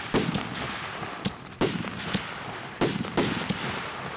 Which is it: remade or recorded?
recorded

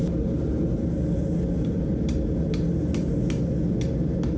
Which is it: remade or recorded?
recorded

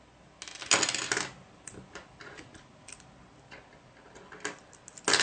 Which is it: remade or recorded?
recorded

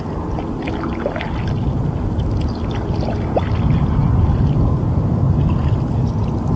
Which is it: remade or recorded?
recorded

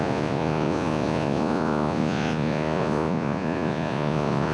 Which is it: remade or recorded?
remade